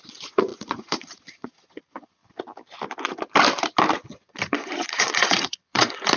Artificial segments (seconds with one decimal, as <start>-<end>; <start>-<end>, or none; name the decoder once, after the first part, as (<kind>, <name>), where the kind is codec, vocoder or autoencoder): 0.0-2.2 (vocoder, Vocos); 4.1-6.2